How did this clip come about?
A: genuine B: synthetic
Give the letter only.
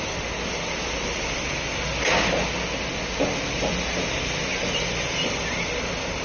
A